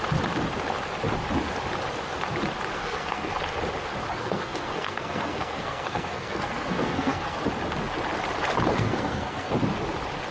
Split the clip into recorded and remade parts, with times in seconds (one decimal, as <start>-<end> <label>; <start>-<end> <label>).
0.0-2.7 recorded; 2.7-3.3 remade; 3.3-4.1 recorded; 4.1-7.4 remade; 7.4-8.7 recorded; 8.7-9.5 remade; 9.5-10.3 recorded